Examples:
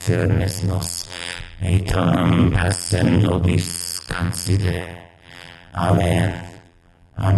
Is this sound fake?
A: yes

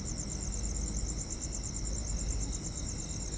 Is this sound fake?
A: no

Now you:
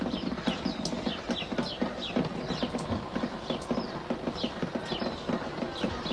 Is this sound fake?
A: no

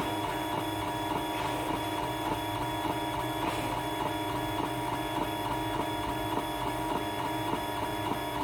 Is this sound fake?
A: no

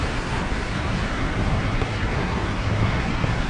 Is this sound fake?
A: yes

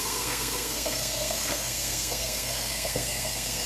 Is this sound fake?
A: yes